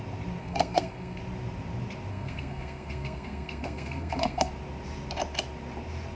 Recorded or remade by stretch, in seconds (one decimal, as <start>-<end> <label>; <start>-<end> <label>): 0.0-0.4 recorded; 0.4-1.2 remade; 1.2-2.1 recorded; 2.1-4.5 remade; 4.5-6.2 recorded